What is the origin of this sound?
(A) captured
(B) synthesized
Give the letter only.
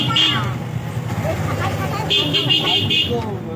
A